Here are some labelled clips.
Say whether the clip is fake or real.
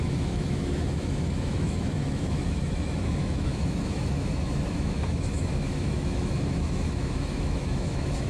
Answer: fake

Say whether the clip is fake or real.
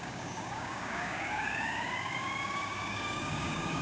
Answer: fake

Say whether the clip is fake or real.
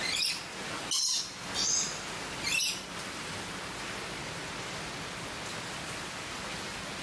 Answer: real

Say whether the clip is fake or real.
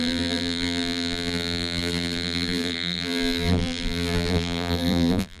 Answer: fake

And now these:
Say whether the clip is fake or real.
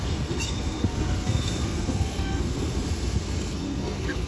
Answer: fake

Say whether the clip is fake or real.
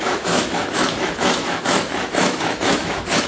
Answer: fake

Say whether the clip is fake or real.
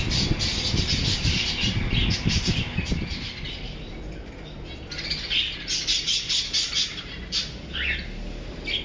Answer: real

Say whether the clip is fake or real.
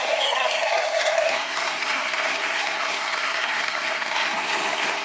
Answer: fake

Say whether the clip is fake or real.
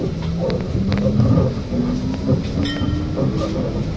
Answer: real